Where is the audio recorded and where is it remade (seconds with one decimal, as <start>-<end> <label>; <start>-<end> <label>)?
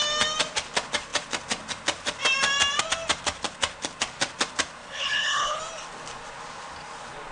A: 0.0-4.8 recorded; 4.8-5.6 remade; 5.6-7.3 recorded